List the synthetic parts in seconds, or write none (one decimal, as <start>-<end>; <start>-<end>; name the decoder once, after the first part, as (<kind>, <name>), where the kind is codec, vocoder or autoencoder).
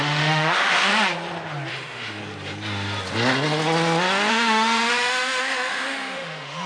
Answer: 0.0-0.9 (autoencoder, DAC-VAE); 1.7-2.2; 4.3-6.7